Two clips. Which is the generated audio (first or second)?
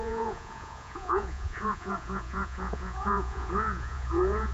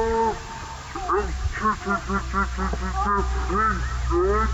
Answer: first